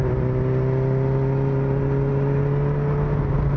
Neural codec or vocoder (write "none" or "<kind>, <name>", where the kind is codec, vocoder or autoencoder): none